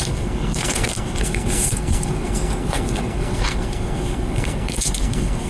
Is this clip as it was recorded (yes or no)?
no